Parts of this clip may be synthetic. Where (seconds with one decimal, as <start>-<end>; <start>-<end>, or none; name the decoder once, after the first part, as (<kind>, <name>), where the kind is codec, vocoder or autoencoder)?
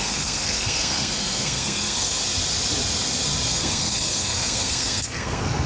0.0-2.2 (codec, SNAC); 3.5-5.7